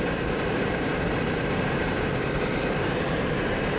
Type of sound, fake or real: fake